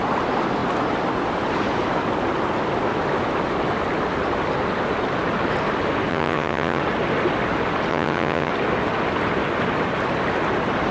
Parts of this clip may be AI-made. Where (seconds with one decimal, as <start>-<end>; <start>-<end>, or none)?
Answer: 6.1-6.8; 7.9-8.5